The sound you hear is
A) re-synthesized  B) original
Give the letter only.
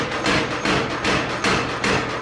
B